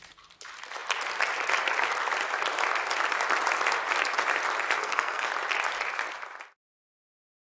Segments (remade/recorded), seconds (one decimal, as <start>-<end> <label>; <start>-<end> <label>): 0.0-4.8 recorded; 4.8-5.3 remade; 5.3-7.4 recorded